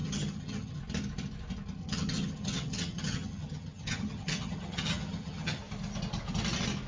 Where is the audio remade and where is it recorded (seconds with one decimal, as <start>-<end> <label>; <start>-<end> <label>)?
0.0-0.8 remade; 0.8-1.8 recorded; 1.8-5.6 remade; 5.6-6.9 recorded